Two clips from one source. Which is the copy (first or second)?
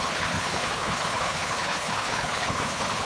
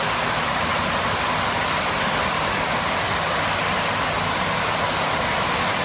first